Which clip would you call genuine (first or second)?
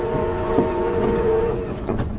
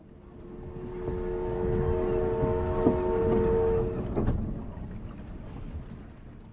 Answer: second